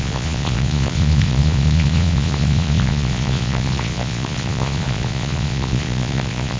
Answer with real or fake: fake